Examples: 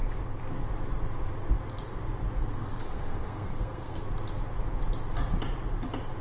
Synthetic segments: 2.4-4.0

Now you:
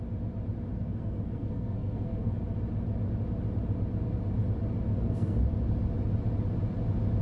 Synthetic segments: 0.7-2.4; 4.9-5.4

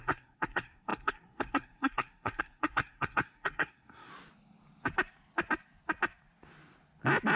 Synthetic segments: 0.0-4.1

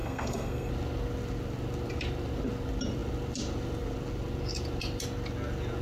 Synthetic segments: 0.0-0.7

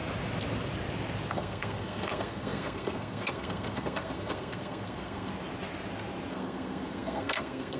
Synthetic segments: 1.3-5.3; 6.3-7.8

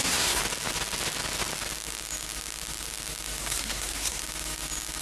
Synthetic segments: 0.0-0.4; 3.4-4.2